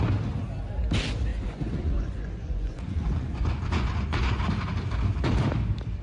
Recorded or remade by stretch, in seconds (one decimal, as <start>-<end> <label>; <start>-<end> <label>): 0.0-1.3 recorded; 1.3-4.4 remade; 4.4-6.0 recorded